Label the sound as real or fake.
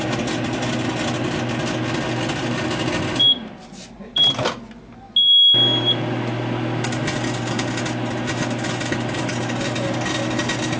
real